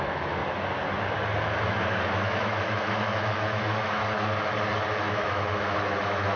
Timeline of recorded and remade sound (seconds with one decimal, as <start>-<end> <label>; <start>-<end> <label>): 0.0-0.4 remade; 0.4-1.6 recorded; 1.6-4.0 remade; 4.0-5.1 recorded; 5.1-6.4 remade